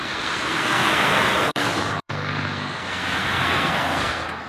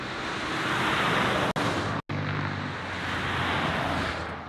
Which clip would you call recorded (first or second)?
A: second